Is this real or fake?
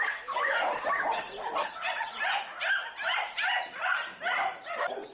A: real